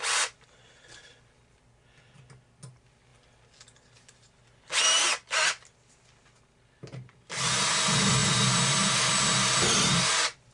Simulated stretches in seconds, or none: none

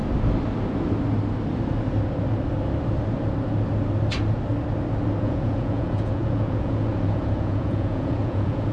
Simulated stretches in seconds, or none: 5.2-8.7 (vocoder, Vocos)

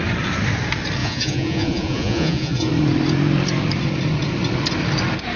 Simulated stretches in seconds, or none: 1.0-2.7 (vocoder, Vocos)

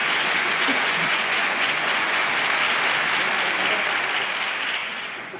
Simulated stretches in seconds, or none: 0.0-2.3 (vocoder, Vocos); 4.8-5.4